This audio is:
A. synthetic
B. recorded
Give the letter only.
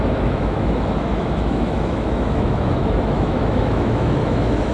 A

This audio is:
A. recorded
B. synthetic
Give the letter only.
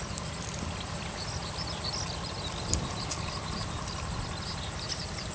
A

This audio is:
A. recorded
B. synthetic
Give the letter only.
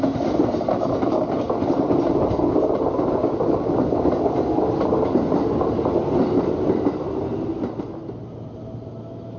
A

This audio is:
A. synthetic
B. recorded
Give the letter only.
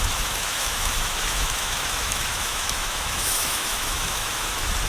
A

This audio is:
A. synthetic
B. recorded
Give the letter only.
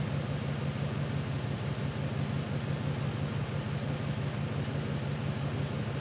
B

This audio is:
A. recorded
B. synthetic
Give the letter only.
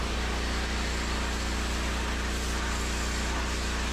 A